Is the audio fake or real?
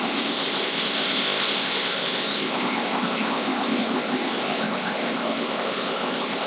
fake